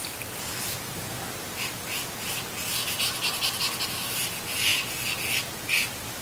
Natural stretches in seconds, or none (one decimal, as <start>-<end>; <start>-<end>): 0.0-6.2